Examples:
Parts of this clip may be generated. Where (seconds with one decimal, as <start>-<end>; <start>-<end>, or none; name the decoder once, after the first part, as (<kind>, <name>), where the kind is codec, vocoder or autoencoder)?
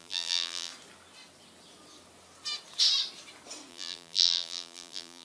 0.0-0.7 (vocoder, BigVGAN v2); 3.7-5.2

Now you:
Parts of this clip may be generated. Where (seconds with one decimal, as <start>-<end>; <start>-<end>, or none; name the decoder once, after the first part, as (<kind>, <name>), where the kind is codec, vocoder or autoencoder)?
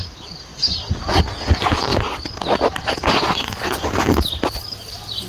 0.5-1.1 (vocoder, BigVGAN v2); 1.9-5.3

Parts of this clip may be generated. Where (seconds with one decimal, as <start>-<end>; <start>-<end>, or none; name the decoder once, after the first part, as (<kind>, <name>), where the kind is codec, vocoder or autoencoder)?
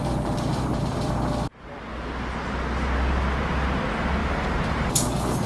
0.0-1.3 (vocoder, BigVGAN v2); 4.2-4.9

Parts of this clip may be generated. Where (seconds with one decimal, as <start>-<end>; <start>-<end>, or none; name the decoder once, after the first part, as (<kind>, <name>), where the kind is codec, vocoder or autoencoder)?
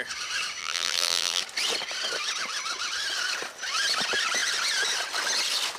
0.6-1.4 (vocoder, BigVGAN v2)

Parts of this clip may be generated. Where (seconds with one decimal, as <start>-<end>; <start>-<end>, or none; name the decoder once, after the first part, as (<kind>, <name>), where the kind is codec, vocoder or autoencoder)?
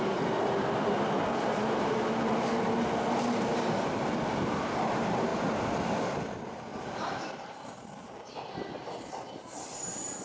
6.7-8.6 (vocoder, BigVGAN v2)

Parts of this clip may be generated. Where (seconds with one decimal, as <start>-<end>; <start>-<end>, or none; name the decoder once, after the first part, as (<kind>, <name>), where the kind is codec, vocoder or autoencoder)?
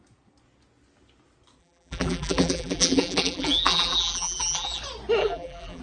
1.6-4.8 (vocoder, BigVGAN v2); 5.2-5.8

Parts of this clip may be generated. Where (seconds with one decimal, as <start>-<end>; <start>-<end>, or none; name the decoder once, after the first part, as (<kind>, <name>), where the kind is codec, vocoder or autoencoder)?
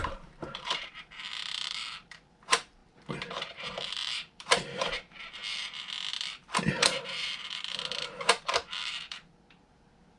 0.0-2.8 (vocoder, BigVGAN v2); 3.3-5.4; 6.3-10.2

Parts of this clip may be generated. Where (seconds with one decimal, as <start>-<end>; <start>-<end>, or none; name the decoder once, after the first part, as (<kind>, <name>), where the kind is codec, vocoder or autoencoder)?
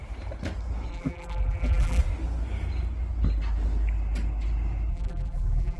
0.9-2.0 (vocoder, BigVGAN v2); 4.9-5.8